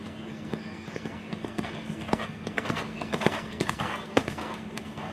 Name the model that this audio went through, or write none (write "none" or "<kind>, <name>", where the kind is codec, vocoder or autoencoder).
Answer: codec, SNAC